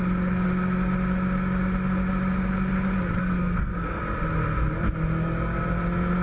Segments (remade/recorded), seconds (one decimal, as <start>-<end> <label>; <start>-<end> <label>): 0.0-3.2 recorded; 3.2-4.0 remade; 4.0-6.2 recorded